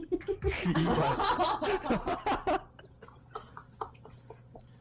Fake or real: real